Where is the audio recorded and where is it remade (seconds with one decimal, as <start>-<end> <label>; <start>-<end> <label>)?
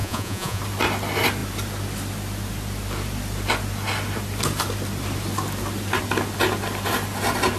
0.0-0.6 remade; 0.6-7.6 recorded